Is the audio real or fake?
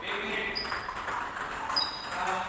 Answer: real